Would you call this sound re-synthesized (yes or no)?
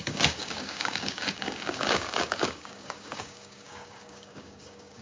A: yes